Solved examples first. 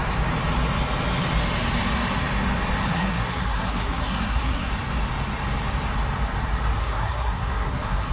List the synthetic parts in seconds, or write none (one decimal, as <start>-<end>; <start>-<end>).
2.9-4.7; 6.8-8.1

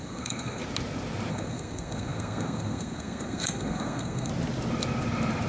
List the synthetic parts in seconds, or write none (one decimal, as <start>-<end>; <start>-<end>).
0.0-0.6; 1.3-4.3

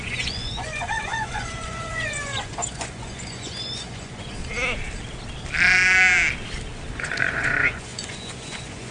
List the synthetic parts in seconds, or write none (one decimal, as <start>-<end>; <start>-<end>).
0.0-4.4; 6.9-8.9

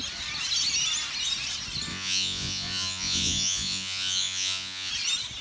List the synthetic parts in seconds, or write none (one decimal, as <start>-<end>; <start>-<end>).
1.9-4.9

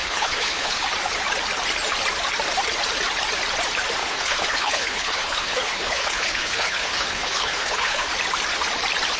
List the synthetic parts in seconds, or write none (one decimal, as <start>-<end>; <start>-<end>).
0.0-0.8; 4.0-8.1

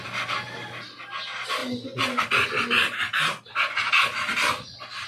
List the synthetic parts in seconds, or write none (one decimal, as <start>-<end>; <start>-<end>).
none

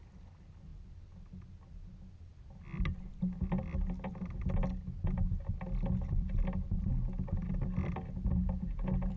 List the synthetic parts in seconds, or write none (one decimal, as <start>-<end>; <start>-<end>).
none